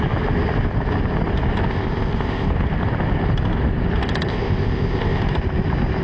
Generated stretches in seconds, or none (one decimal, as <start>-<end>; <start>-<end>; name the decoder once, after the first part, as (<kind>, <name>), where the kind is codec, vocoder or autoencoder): 1.7-2.5 (codec, ZipCodec); 4.3-5.2